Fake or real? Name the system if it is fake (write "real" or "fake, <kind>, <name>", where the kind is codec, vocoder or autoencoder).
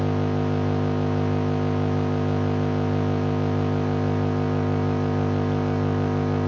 real